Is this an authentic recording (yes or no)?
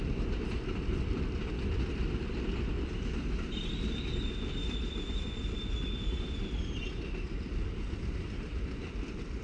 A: yes